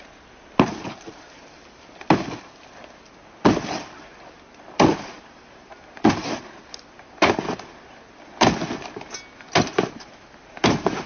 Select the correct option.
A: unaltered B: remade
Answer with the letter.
A